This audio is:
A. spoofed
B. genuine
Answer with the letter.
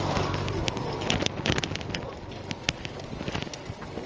B